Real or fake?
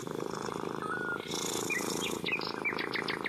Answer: real